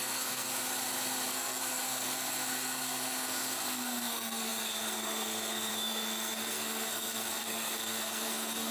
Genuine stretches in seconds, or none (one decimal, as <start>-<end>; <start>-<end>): 0.5-1.3